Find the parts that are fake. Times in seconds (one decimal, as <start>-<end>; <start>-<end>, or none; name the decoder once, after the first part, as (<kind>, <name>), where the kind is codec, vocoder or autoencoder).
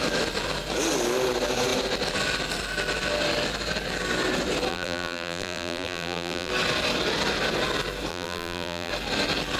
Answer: 4.7-6.5 (vocoder, BigVGAN v2); 8.1-8.9